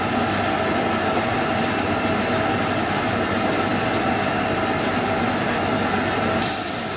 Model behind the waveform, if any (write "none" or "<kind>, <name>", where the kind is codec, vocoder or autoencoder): none